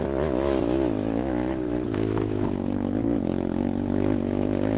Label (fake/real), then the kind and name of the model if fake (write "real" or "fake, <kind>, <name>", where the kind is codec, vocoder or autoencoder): fake, autoencoder, DAC-VAE